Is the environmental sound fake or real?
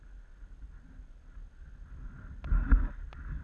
real